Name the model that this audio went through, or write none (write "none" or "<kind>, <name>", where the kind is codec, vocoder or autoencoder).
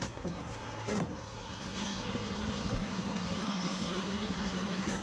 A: codec, SNAC